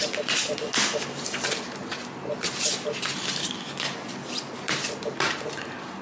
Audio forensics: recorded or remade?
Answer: recorded